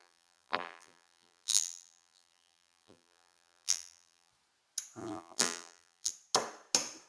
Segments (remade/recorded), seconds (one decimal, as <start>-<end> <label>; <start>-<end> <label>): 0.0-4.3 remade; 4.3-5.0 recorded; 5.0-6.1 remade; 6.1-7.1 recorded